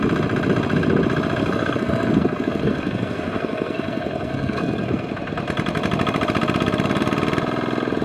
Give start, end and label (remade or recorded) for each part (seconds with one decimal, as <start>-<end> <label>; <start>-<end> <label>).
0.0-1.4 recorded; 1.4-5.1 remade; 5.1-8.0 recorded